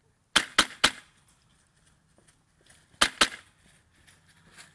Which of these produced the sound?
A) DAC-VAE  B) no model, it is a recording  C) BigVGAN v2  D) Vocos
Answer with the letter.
B